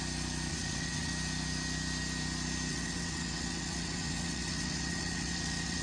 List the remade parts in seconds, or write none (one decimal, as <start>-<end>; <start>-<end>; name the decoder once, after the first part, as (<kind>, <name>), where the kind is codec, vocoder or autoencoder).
0.5-1.1 (vocoder, WaveNeXt); 2.7-5.8